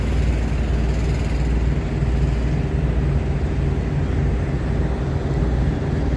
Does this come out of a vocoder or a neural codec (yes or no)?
no